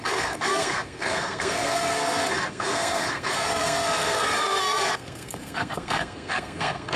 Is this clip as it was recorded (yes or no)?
no